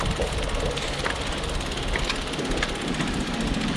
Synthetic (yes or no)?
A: no